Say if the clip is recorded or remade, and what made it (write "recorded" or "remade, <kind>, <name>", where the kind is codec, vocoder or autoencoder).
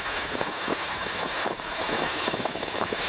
remade, autoencoder, DAC-VAE